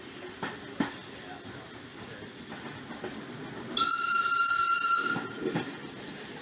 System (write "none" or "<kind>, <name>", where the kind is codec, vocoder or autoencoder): none